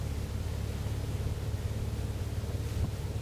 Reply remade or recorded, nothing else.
recorded